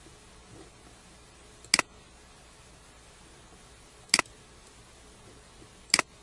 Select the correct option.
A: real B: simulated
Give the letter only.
A